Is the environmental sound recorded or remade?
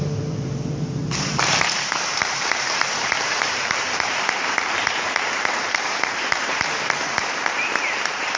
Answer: remade